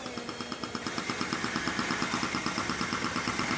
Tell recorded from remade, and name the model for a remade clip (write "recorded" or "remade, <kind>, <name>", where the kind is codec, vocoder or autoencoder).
recorded